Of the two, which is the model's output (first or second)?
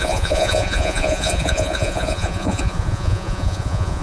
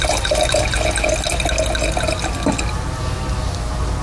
first